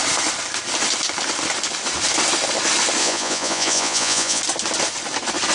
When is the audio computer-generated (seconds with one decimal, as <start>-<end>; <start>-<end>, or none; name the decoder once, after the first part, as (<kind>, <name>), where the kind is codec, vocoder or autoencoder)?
3.0-4.4 (vocoder, Vocos)